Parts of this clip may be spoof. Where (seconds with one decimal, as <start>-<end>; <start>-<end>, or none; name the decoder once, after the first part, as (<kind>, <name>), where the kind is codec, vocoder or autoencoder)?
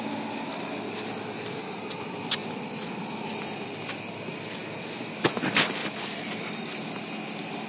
5.8-6.4 (vocoder, BigVGAN v2)